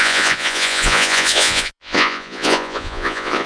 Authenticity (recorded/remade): remade